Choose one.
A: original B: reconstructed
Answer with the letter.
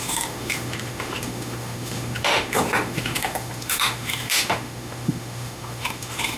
B